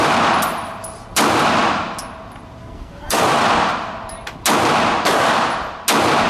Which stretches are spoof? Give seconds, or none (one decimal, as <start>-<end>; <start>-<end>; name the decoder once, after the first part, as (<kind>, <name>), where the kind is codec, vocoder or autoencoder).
2.6-3.2 (codec, SNAC)